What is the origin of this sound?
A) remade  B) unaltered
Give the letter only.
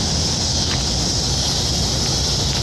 B